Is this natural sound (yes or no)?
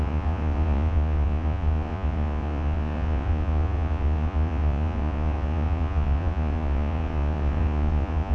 no